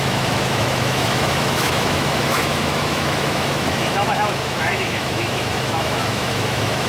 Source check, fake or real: fake